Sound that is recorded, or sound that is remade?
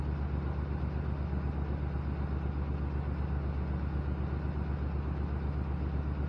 recorded